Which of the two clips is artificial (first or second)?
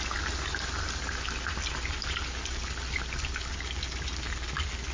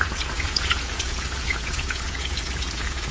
second